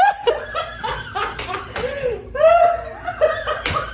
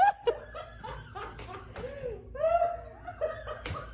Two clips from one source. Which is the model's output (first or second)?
first